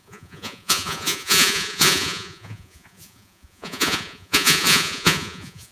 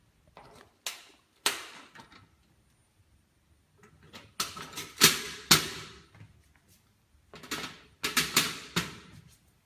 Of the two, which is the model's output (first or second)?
first